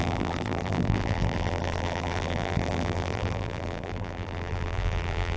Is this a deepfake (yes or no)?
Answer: yes